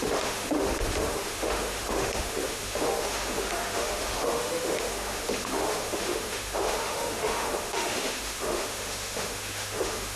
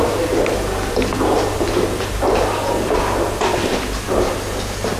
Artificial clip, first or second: first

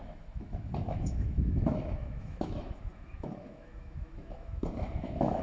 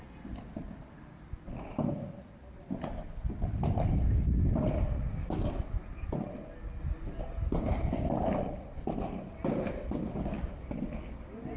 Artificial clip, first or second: first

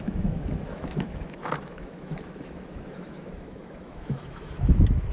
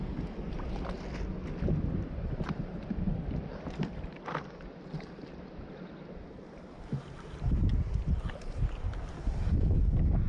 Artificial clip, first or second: first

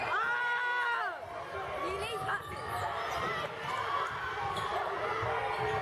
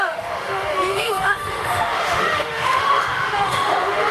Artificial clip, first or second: second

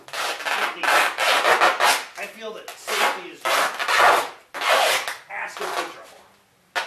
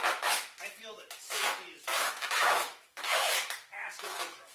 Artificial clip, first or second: second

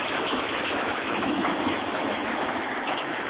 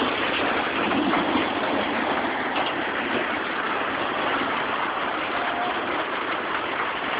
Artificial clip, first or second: first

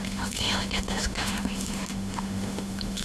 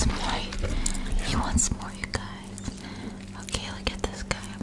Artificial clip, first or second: first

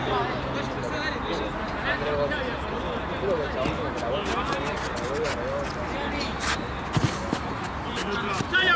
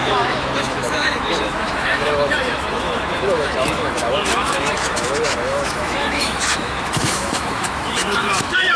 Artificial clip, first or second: second